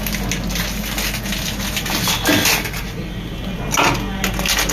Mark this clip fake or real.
real